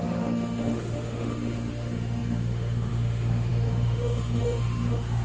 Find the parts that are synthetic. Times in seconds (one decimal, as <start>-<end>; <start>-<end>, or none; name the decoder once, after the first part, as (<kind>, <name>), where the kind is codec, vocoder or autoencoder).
0.0-5.2 (autoencoder, DAC-VAE)

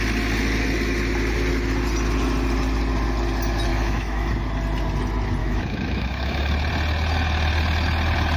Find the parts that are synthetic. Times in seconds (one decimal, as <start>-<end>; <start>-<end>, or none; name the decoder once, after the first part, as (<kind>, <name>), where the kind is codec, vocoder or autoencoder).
3.7-4.3 (autoencoder, DAC-VAE); 5.4-6.5

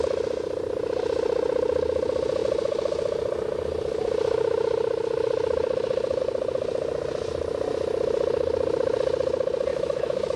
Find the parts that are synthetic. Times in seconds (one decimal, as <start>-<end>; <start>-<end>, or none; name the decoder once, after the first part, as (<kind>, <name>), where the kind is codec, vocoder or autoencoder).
9.7-10.4 (autoencoder, DAC-VAE)